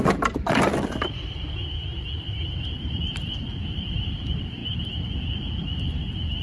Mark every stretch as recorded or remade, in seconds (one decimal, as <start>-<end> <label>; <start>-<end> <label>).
0.0-4.6 remade; 4.6-6.4 recorded